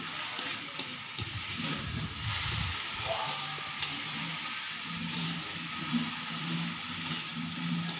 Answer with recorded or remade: recorded